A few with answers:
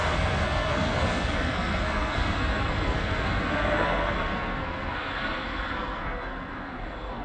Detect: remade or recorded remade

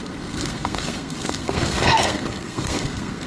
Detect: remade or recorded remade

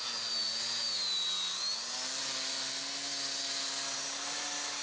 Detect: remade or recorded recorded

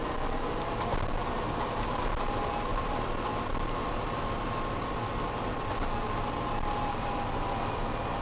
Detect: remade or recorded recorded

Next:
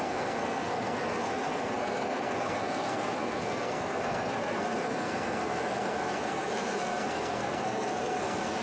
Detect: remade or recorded remade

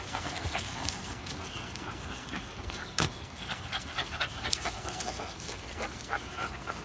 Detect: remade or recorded remade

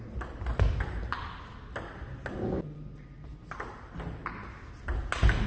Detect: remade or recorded recorded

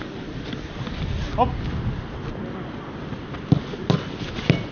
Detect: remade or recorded recorded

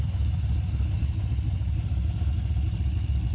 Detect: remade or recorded recorded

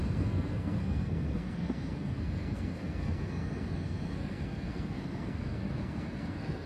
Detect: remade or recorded remade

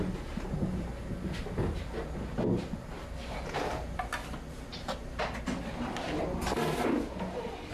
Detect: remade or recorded recorded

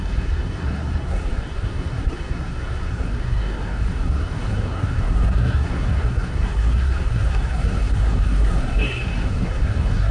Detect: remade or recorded remade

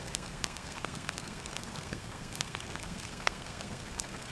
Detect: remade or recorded remade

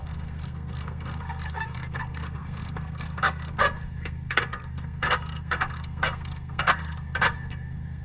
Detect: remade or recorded remade